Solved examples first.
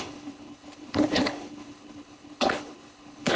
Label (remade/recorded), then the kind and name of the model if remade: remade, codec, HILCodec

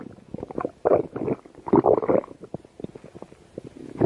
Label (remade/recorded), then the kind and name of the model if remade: recorded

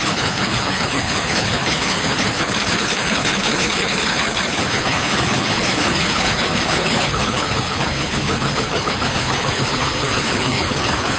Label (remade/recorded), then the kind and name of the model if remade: remade, codec, HILCodec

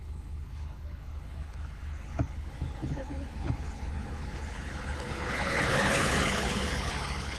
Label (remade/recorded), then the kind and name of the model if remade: remade, codec, HILCodec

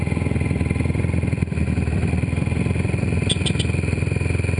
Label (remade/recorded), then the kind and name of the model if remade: recorded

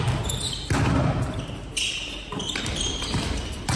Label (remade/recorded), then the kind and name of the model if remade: recorded